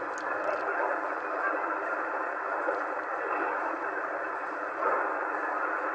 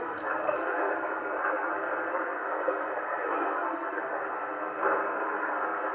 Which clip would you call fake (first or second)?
second